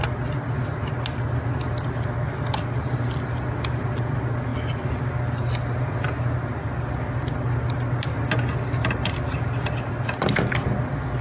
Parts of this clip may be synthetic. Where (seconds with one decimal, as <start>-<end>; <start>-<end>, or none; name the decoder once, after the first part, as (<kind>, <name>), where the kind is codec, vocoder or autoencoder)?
none